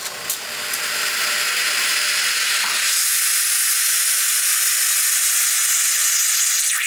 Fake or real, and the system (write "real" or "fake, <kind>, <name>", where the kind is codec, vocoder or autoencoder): real